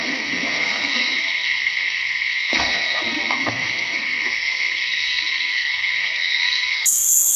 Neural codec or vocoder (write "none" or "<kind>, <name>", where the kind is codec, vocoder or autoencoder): codec, SNAC